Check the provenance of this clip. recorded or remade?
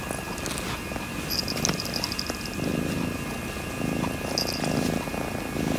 recorded